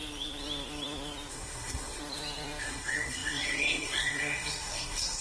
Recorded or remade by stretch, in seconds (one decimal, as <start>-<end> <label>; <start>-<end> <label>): 0.0-1.3 recorded; 1.3-2.0 remade; 2.0-2.6 recorded; 2.6-5.2 remade